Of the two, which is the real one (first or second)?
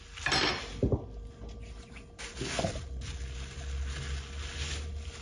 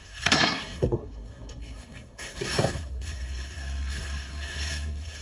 first